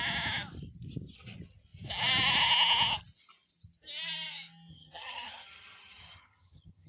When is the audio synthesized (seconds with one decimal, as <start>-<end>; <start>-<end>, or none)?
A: 4.7-6.9